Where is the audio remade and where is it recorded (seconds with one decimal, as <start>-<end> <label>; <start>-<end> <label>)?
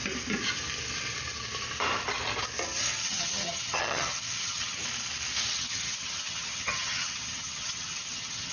0.0-3.0 recorded; 3.0-4.8 remade; 4.8-5.5 recorded; 5.5-8.5 remade